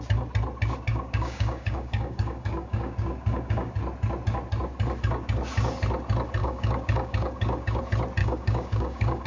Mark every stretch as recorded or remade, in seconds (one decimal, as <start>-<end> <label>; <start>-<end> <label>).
0.0-0.9 recorded; 0.9-3.8 remade; 3.8-6.4 recorded; 6.4-7.8 remade; 7.8-8.2 recorded; 8.2-9.3 remade